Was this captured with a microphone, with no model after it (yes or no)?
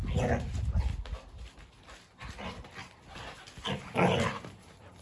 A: yes